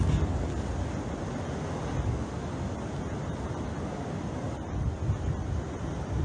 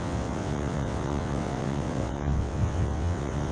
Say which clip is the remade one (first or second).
second